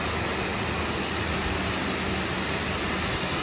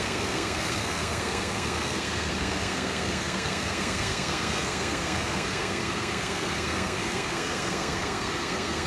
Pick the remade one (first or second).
second